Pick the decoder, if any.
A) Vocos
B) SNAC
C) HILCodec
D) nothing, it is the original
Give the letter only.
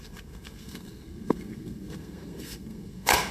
B